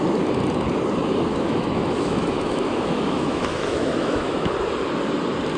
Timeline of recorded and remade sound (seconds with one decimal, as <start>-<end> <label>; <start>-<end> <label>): 0.0-1.3 recorded; 1.3-4.5 remade; 4.5-5.6 recorded